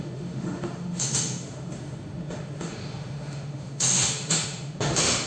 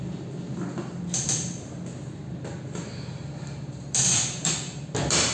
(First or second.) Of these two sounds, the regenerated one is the first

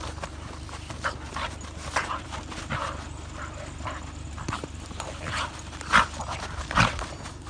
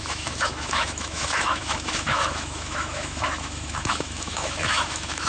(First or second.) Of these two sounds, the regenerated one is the second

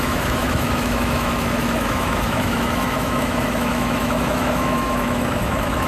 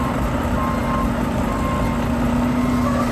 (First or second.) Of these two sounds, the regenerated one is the first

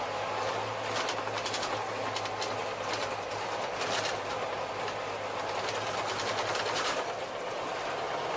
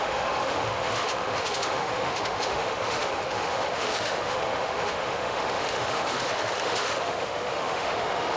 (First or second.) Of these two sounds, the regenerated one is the second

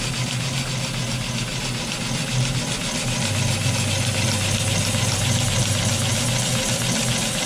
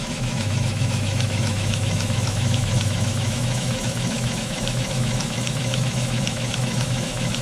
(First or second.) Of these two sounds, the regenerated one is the second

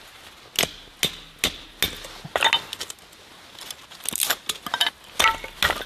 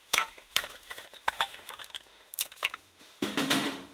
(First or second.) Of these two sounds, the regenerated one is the second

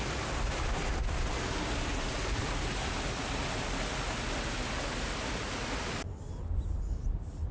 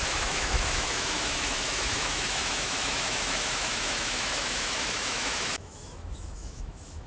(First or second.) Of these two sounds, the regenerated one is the second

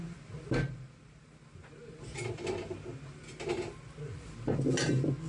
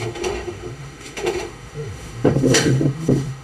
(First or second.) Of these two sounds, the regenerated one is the second